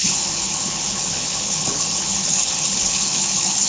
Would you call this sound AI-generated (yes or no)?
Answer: yes